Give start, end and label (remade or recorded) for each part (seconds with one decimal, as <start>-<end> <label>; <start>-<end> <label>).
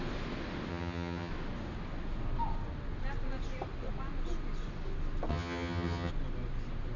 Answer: 0.0-0.7 recorded; 0.7-1.3 remade; 1.3-5.3 recorded; 5.3-6.1 remade; 6.1-7.0 recorded